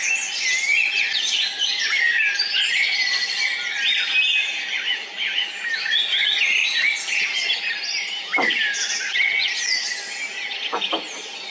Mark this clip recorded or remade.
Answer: recorded